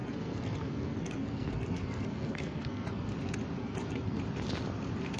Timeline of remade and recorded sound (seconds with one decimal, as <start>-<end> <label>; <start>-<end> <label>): 0.0-3.1 remade; 3.1-3.6 recorded; 3.6-4.2 remade; 4.2-5.2 recorded